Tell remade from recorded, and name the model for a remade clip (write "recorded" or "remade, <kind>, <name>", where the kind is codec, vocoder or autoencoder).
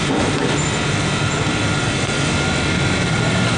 recorded